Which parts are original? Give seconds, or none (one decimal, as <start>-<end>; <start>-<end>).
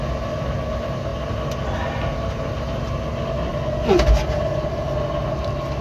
0.0-5.8